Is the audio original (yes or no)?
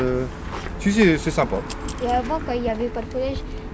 yes